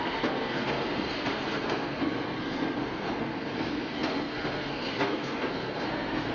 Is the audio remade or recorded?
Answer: remade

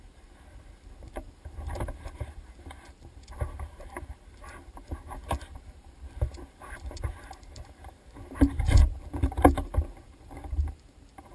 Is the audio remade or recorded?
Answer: remade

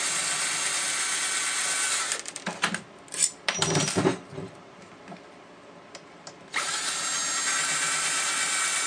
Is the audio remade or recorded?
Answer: recorded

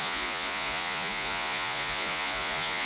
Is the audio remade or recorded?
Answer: remade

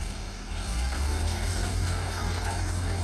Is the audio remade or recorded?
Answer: remade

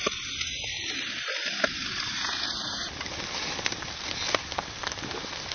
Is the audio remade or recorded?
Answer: recorded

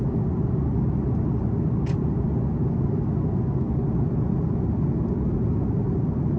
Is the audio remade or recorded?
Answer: recorded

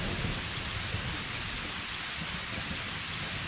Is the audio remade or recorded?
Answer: recorded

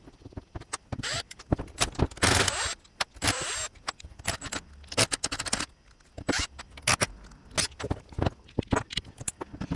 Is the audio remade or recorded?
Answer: recorded